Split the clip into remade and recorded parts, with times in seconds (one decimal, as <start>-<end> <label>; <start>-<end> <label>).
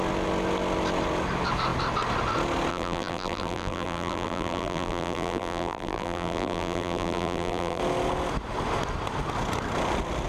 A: 0.0-2.7 recorded; 2.7-7.8 remade; 7.8-10.3 recorded